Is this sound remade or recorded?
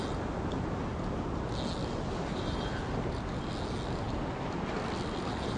recorded